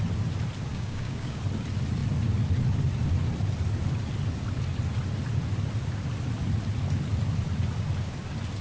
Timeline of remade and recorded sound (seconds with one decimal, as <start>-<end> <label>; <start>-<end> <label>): 0.0-0.7 recorded; 0.7-1.4 remade; 1.4-8.6 recorded